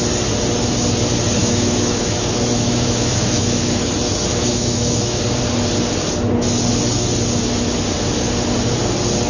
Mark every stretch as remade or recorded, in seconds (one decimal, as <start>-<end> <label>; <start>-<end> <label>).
0.0-1.4 recorded; 1.4-3.8 remade; 3.8-4.3 recorded; 4.3-5.2 remade; 5.2-9.3 recorded

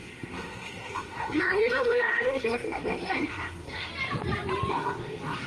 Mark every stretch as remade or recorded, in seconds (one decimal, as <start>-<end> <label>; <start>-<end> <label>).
0.0-3.9 remade; 3.9-4.7 recorded; 4.7-5.5 remade

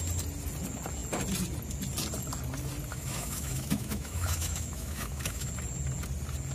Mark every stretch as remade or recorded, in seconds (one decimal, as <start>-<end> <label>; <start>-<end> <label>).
0.0-2.9 recorded; 2.9-5.5 remade; 5.5-6.5 recorded

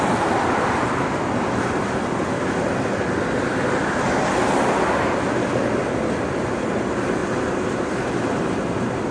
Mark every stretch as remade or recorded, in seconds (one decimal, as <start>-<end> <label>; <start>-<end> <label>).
0.0-9.1 recorded

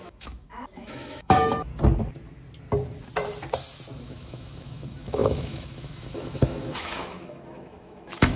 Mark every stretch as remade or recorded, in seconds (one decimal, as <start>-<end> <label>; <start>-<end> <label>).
0.0-1.7 remade; 1.7-4.0 recorded; 4.0-8.4 remade